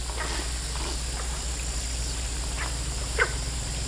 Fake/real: real